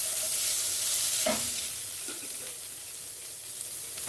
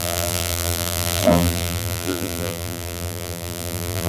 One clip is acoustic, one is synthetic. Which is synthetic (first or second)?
second